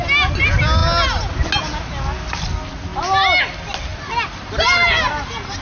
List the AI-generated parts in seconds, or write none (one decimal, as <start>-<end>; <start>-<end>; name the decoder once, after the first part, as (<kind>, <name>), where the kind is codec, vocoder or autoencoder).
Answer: none

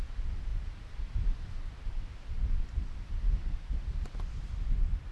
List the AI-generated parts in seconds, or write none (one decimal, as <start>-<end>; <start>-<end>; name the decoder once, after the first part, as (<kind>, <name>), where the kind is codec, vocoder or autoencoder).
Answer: none

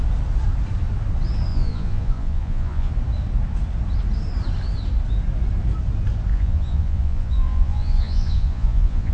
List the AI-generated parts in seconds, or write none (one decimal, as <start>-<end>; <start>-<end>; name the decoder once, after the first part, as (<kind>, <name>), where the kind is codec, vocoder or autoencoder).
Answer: 1.5-2.9 (vocoder, Vocos); 6.3-9.1